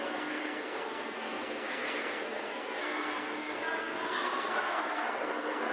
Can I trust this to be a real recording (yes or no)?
no